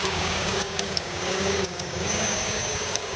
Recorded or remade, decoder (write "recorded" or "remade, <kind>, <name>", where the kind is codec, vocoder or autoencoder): remade, codec, DAC